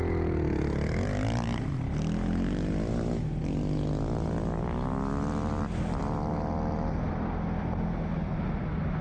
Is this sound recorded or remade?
recorded